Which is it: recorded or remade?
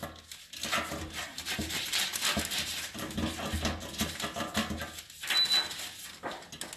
recorded